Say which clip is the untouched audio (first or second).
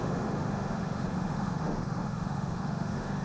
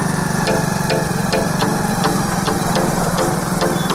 second